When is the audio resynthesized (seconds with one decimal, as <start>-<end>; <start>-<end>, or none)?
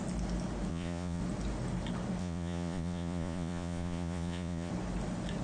0.7-1.2; 2.2-4.7